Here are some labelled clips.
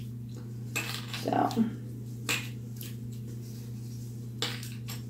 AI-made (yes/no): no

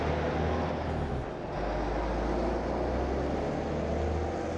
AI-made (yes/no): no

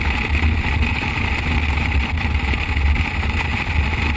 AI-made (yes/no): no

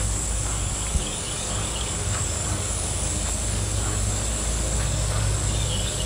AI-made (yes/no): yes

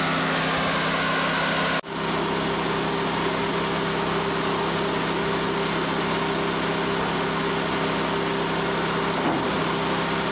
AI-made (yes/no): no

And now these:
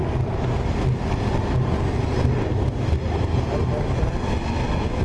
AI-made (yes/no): no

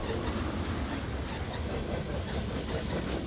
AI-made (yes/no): no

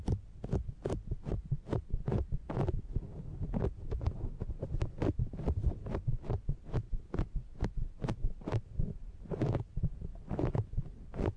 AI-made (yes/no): no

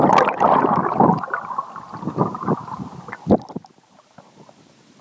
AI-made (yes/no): no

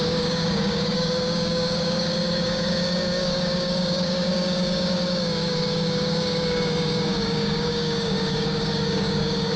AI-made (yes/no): yes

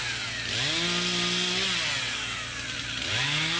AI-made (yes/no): no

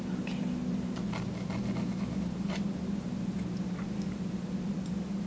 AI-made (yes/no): no